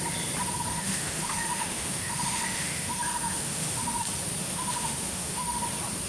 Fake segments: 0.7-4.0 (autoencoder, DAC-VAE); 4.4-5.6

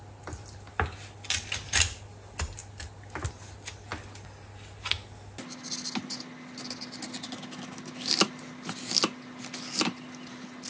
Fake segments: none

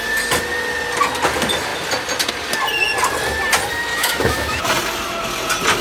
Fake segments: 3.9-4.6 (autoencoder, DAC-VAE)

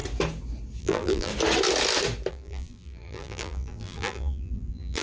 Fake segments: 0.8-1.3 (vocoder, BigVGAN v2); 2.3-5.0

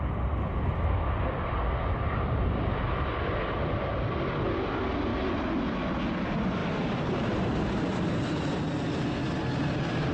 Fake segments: 6.6-7.4 (vocoder, BigVGAN v2)

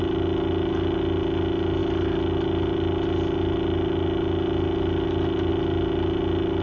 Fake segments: none

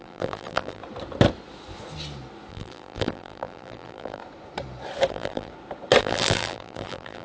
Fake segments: 0.0-0.8 (vocoder, BigVGAN v2); 2.5-4.2; 5.1-5.5; 6.0-7.2